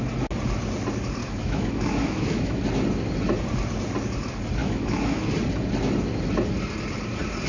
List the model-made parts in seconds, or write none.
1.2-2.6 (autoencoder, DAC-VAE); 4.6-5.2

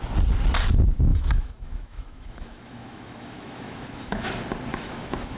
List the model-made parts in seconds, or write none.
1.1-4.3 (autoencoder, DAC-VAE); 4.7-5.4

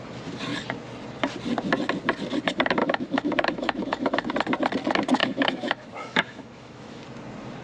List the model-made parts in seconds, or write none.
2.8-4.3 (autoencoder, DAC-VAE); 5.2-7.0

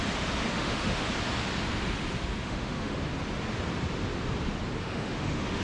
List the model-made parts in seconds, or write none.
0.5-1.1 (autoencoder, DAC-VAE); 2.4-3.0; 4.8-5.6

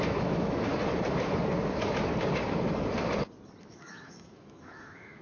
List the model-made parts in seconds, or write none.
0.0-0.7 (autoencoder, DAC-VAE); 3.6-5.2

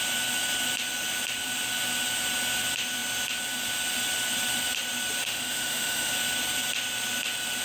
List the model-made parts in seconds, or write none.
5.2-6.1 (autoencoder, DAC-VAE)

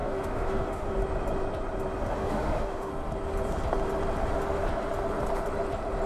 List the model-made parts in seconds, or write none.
0.0-1.0 (autoencoder, DAC-VAE); 2.1-2.9